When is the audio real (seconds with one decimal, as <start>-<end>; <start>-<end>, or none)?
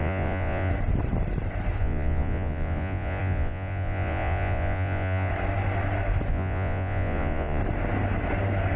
0.7-1.8; 5.3-6.3; 7.6-8.8